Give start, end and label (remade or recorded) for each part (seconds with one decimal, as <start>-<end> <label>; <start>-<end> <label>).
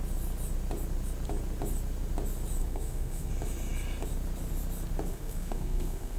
0.0-2.6 recorded; 2.6-3.3 remade; 3.3-5.1 recorded; 5.1-6.2 remade